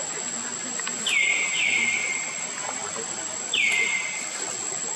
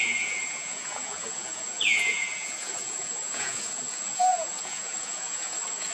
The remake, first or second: second